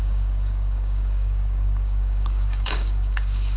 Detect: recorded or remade remade